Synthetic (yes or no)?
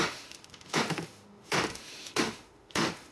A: yes